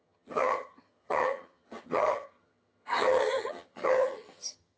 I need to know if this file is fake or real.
fake